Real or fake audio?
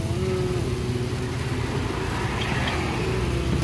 real